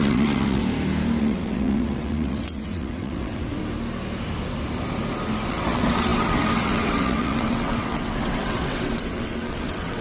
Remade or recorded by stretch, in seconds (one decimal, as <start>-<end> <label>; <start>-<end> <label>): 0.0-0.6 remade; 0.6-1.2 recorded; 1.2-3.6 remade; 3.6-5.5 recorded; 5.5-10.0 remade